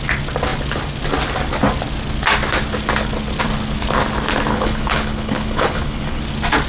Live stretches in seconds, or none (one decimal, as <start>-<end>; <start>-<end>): 0.0-4.5; 6.2-6.7

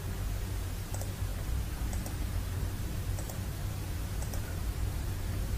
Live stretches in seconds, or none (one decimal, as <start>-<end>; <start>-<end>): none

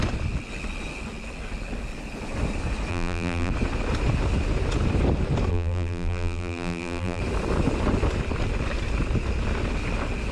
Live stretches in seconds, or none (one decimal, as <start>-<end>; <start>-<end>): 0.0-2.9; 3.5-5.5; 7.2-10.3

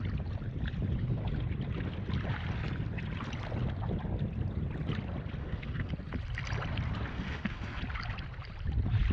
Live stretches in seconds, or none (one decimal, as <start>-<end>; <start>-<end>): 0.0-5.4; 5.9-7.1; 7.8-9.1

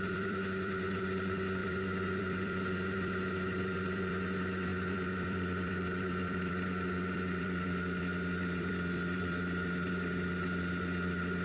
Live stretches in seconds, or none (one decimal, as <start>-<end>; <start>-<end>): none

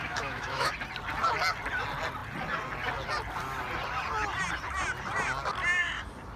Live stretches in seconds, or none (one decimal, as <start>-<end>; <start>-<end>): 0.7-6.4

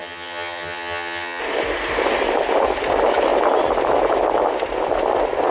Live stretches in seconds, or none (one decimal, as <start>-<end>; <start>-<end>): 1.4-5.5